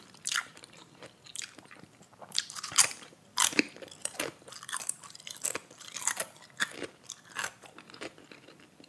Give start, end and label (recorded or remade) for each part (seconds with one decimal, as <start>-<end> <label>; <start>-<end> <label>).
0.0-0.5 remade; 0.5-1.3 recorded; 1.3-8.9 remade